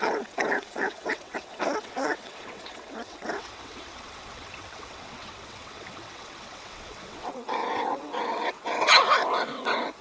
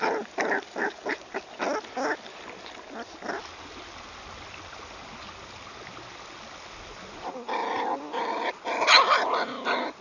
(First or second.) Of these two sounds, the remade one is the first